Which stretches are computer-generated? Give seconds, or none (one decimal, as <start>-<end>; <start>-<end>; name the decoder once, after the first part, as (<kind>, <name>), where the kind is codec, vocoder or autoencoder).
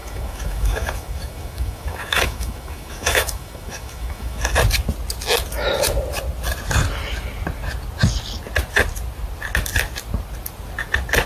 0.0-4.4 (autoencoder, DAC-VAE)